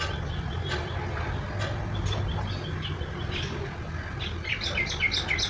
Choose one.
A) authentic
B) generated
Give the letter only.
A